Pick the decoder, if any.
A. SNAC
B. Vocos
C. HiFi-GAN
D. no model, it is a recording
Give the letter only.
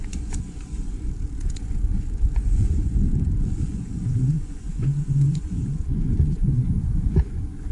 B